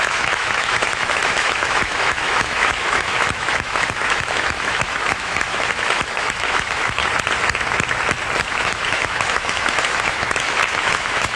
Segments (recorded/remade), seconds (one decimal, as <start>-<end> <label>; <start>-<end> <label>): 0.0-7.0 remade; 7.0-8.4 recorded; 8.4-11.4 remade